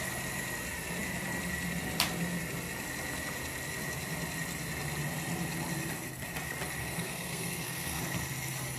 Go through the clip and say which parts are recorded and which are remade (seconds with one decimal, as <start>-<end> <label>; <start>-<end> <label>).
0.0-6.8 recorded; 6.8-8.0 remade; 8.0-8.8 recorded